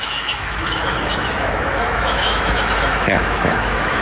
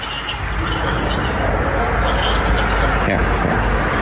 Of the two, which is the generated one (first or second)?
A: first